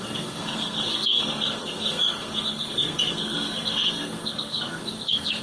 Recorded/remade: remade